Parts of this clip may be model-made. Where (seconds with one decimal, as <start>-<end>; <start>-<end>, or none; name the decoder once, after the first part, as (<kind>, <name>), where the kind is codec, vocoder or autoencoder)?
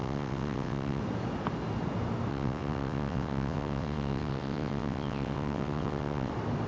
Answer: 0.0-1.0 (vocoder, WaveNeXt); 2.3-6.3